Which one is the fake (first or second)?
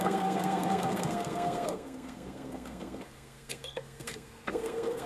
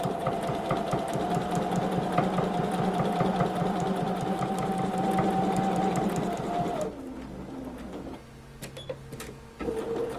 first